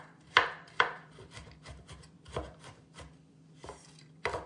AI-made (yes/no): yes